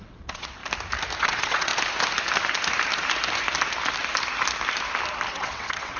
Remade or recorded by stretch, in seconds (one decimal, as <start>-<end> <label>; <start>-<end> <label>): 0.0-0.6 remade; 0.6-1.2 recorded; 1.2-1.7 remade; 1.7-5.3 recorded; 5.3-6.0 remade